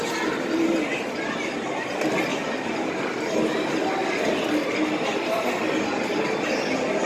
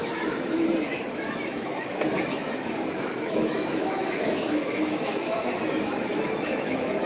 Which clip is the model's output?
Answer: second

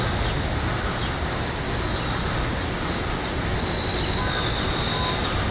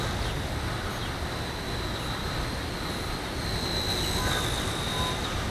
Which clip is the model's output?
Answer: second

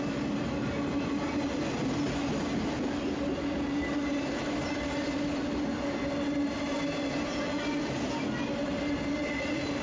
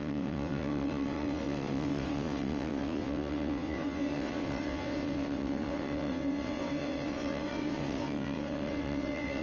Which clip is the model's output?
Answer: second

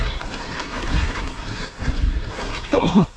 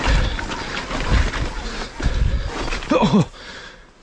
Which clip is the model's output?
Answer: first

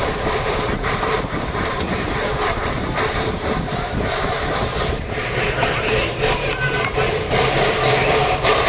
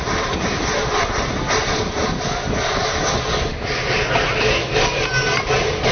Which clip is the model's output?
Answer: first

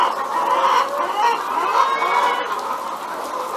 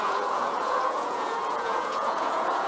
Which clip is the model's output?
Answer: second